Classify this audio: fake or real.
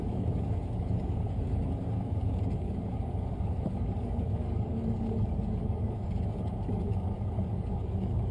fake